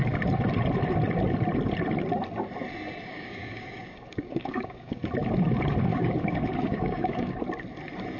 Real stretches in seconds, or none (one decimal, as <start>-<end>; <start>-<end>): 0.0-3.1; 5.1-5.9; 7.3-8.2